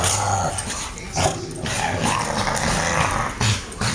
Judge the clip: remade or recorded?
recorded